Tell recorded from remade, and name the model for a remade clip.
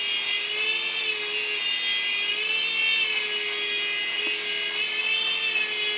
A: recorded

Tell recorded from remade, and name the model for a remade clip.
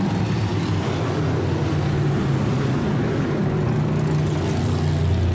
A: recorded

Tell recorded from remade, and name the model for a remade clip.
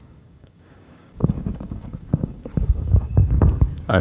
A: remade, codec, DAC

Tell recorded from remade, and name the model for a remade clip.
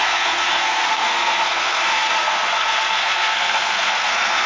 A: remade, codec, SNAC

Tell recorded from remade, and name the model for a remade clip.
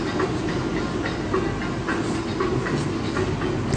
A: recorded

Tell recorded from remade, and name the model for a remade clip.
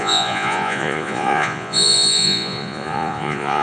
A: remade, vocoder, Vocos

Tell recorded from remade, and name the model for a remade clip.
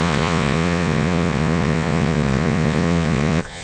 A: remade, vocoder, Vocos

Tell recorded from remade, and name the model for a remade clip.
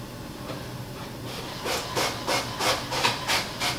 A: recorded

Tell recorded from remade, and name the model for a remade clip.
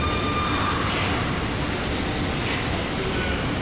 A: recorded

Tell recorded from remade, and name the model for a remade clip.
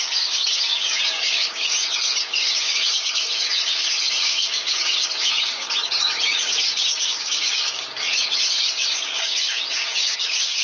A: remade, codec, DAC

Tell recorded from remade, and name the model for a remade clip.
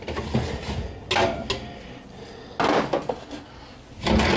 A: recorded